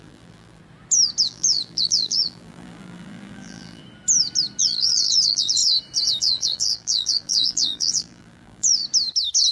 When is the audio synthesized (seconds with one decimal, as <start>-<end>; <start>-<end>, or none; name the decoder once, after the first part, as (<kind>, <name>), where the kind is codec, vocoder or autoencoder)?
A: 0.0-0.6 (vocoder, BigVGAN v2); 1.2-3.8; 4.6-5.6; 6.2-8.8